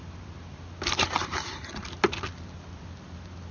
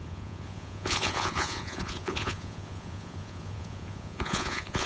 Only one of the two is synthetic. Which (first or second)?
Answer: second